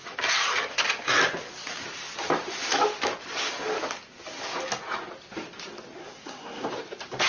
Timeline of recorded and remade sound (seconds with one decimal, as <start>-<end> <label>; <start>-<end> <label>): 0.0-6.0 recorded; 6.0-6.7 remade; 6.7-7.3 recorded